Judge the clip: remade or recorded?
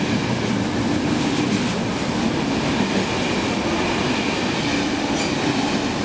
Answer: recorded